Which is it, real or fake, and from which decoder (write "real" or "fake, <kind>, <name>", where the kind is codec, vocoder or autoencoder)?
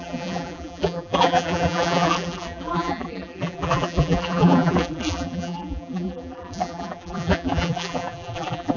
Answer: fake, vocoder, BigVGAN v2